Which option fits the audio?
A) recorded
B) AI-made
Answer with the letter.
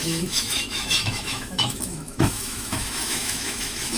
B